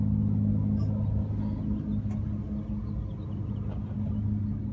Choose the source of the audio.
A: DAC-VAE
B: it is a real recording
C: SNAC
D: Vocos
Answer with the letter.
B